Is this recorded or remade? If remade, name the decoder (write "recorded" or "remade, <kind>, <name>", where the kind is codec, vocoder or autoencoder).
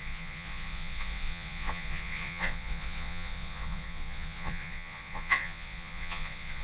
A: remade, vocoder, Vocos